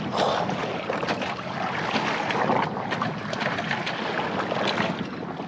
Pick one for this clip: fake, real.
real